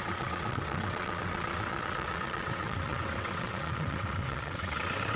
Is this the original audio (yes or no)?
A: no